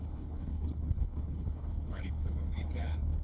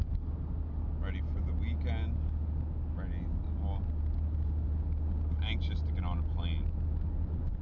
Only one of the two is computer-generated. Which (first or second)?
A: first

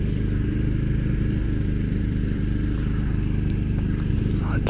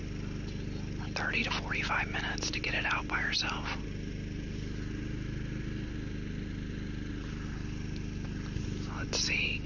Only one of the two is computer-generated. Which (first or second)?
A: first